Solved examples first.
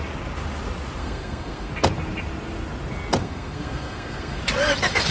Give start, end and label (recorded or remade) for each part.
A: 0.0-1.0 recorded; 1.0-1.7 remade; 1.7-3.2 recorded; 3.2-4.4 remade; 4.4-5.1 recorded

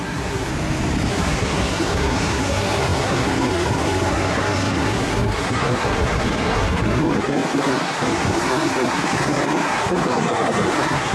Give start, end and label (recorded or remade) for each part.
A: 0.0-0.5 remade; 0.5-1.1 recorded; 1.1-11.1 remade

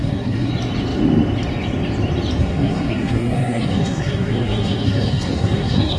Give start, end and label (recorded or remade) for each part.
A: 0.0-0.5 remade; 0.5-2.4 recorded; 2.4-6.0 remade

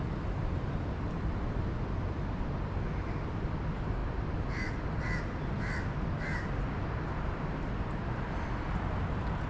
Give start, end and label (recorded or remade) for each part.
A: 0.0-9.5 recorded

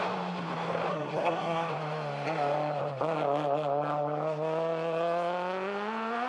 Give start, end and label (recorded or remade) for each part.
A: 0.0-0.9 recorded; 0.9-1.7 remade; 1.7-6.3 recorded